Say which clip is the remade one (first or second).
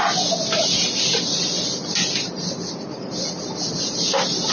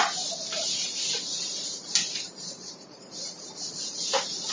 second